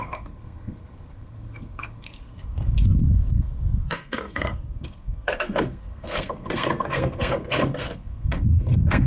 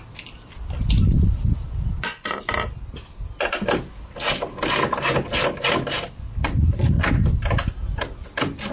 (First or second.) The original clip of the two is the second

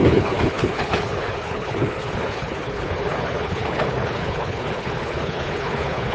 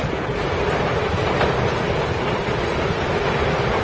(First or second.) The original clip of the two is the second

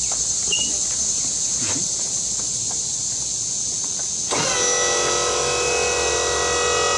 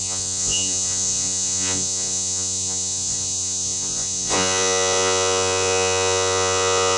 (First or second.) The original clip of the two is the first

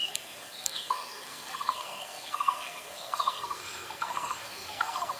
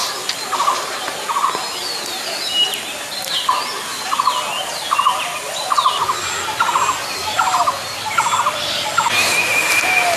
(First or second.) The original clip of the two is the second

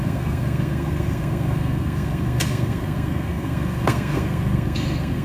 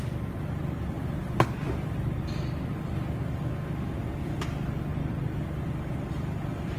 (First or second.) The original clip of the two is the second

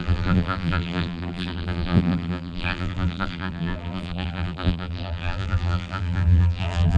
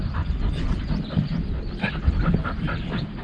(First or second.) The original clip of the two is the second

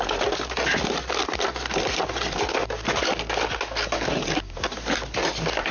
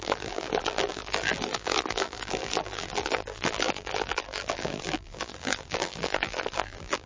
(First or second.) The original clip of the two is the first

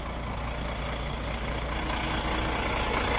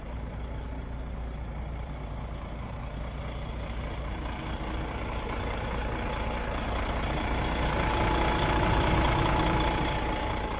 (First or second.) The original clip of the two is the first